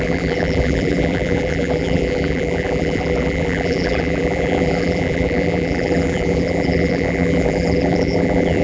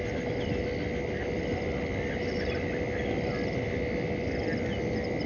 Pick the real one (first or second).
second